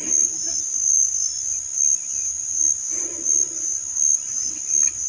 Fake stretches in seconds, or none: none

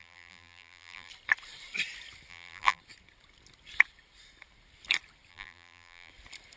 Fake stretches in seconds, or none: 0.0-1.1 (vocoder, BigVGAN v2); 2.3-2.8; 5.3-6.1

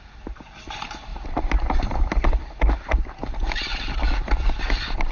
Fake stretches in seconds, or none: none